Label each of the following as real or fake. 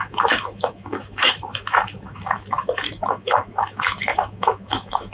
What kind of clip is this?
fake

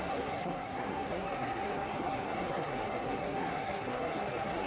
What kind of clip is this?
fake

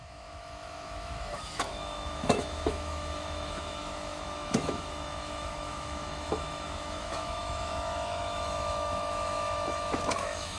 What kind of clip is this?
fake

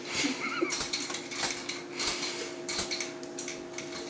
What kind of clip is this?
real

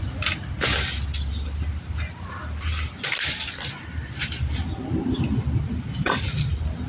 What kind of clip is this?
real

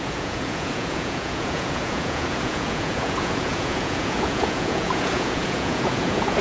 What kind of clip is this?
fake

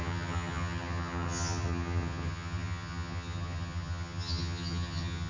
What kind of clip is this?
fake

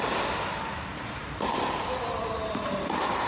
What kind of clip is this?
fake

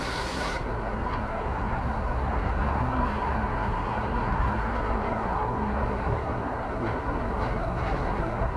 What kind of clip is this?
fake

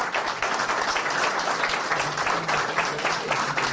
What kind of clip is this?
real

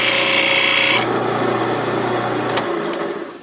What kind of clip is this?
fake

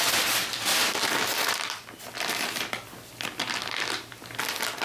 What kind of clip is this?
real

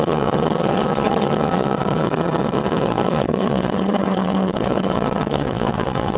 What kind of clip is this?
fake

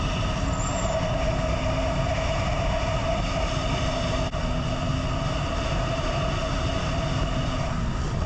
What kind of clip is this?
real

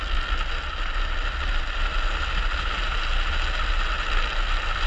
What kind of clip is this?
real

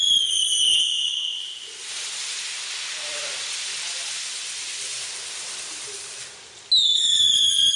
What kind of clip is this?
real